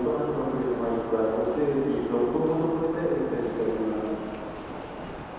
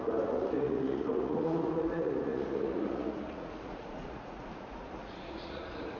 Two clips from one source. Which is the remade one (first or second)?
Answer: second